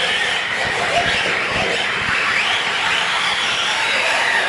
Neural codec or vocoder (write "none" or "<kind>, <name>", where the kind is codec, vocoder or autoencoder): vocoder, BigVGAN v2